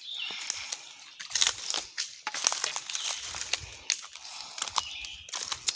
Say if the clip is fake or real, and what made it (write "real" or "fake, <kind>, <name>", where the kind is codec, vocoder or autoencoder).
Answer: real